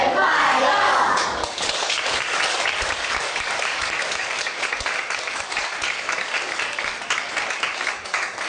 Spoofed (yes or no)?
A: yes